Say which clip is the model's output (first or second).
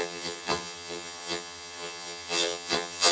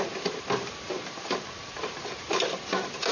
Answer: first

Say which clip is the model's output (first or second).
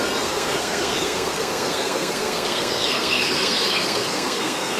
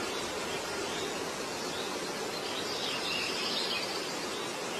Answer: first